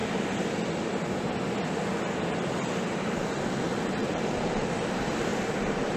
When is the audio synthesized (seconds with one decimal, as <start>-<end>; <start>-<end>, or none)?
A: 4.0-4.7; 5.3-6.0